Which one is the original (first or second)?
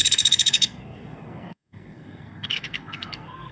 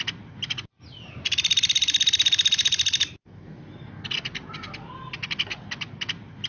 second